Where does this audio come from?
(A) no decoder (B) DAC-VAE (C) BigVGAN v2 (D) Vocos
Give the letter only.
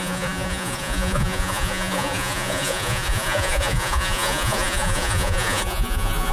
D